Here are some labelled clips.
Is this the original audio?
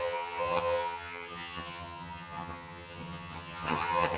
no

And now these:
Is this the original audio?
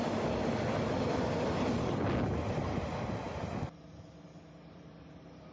yes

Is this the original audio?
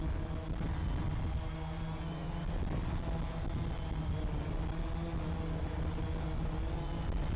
yes